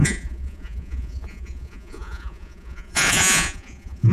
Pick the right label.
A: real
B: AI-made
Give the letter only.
B